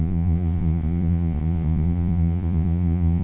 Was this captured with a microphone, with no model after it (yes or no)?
no